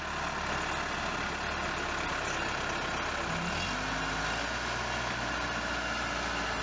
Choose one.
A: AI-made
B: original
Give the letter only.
B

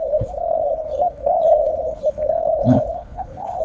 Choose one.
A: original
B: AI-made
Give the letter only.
B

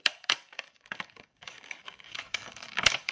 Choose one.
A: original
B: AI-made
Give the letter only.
B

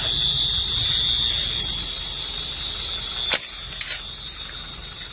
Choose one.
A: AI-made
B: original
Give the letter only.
B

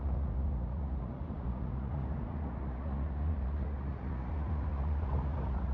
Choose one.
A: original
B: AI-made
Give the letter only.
B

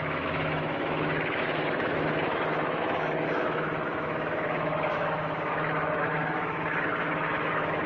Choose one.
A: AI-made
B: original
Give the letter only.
A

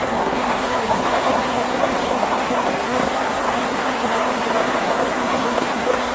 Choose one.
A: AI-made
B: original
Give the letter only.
A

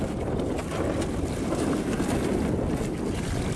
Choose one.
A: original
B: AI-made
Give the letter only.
A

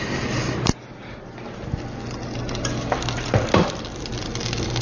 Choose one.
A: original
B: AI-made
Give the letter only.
A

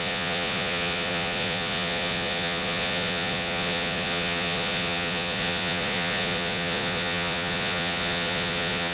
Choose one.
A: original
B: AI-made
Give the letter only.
B